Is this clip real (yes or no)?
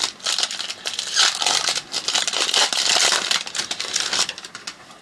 yes